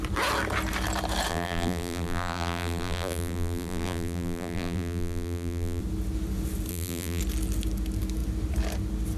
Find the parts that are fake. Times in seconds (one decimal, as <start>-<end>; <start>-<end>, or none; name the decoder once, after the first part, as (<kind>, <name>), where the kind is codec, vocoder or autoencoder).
1.3-5.8 (vocoder, BigVGAN v2); 6.7-7.2